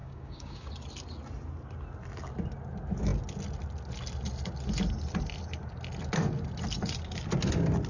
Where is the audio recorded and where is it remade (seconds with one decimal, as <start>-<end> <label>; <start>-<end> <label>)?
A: 0.0-0.7 remade; 0.7-7.9 recorded